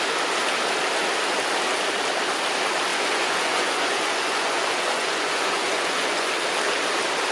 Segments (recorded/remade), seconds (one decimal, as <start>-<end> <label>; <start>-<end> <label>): 0.0-2.9 recorded; 2.9-6.3 remade; 6.3-7.3 recorded